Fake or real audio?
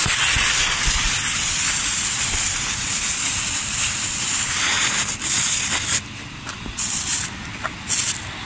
real